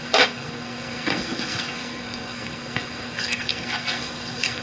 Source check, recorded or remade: remade